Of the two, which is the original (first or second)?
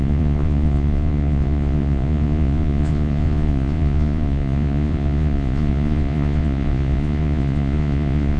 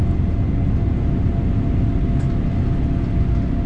second